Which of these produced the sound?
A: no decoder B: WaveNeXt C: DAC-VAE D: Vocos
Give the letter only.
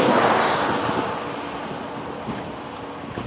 A